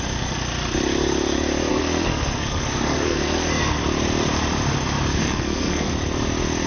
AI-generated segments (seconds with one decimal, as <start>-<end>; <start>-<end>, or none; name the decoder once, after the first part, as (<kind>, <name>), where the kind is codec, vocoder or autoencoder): 1.7-3.8 (codec, SNAC); 5.2-5.9